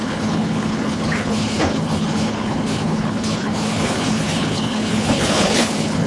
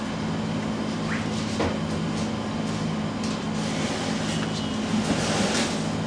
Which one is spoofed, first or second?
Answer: first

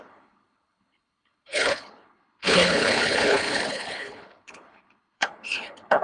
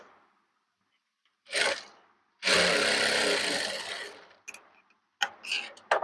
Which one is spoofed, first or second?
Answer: first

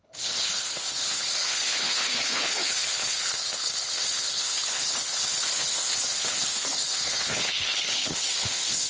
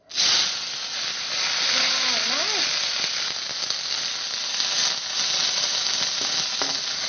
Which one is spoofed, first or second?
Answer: first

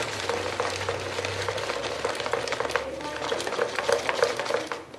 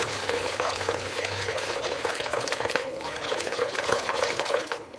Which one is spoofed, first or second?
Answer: second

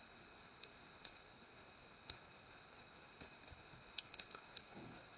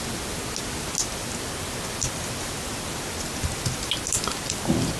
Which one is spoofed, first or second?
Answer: first